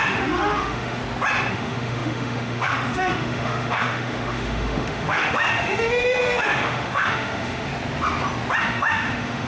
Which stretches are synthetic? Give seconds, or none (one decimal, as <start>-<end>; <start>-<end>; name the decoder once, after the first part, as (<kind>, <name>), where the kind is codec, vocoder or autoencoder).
0.0-1.0 (autoencoder, DAC-VAE); 1.5-7.7; 8.6-9.5